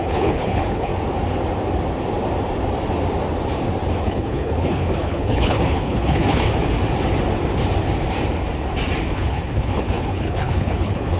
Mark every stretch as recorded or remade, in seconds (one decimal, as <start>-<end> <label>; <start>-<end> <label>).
0.0-0.9 remade; 0.9-4.0 recorded; 4.0-6.5 remade; 6.5-9.1 recorded; 9.1-11.2 remade